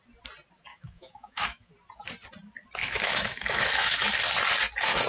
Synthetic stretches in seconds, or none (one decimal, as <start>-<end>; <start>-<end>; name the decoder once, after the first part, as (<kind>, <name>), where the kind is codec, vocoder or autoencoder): 0.7-1.7 (autoencoder, DAC-VAE); 2.8-4.1

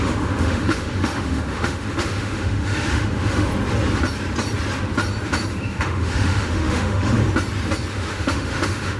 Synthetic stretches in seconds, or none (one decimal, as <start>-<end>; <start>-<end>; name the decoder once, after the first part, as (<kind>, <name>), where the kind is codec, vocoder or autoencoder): 0.0-3.5 (autoencoder, DAC-VAE); 5.5-7.2; 7.9-9.0

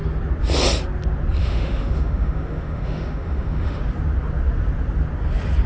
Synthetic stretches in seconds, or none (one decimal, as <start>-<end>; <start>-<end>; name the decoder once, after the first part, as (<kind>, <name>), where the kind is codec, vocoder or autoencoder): 1.4-3.8 (autoencoder, DAC-VAE)